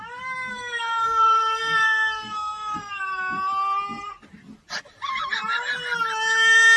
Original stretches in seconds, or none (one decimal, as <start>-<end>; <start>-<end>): 0.0-0.5; 2.9-6.8